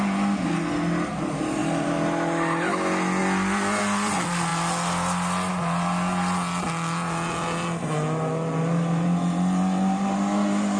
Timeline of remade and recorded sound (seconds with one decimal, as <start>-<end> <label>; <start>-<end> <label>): 0.0-10.8 recorded